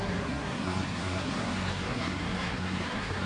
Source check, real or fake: fake